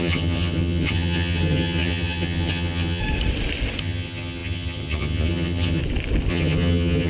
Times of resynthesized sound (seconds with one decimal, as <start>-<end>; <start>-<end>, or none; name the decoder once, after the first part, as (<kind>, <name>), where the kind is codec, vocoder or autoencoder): 0.0-3.0 (vocoder, HiFi-GAN); 3.8-5.8; 6.3-7.1

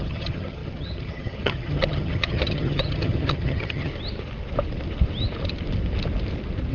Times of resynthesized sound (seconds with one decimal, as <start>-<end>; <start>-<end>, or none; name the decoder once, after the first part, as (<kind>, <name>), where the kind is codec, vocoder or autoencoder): 0.0-3.9 (vocoder, HiFi-GAN)

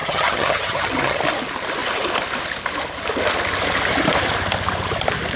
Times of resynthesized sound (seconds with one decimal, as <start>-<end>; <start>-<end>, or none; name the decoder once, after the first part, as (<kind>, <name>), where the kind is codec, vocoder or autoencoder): 0.0-1.2 (vocoder, HiFi-GAN)

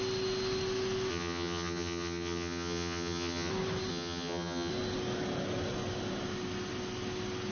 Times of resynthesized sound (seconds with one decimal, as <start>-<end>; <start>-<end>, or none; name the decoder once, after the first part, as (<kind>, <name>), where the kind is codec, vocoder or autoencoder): 1.1-3.5 (vocoder, HiFi-GAN); 3.9-4.7